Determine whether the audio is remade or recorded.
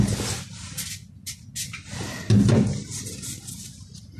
recorded